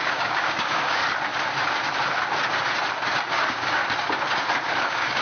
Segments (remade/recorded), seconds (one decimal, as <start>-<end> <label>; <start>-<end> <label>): 0.0-1.0 remade; 1.0-3.3 recorded; 3.3-3.8 remade; 3.8-4.8 recorded; 4.8-5.2 remade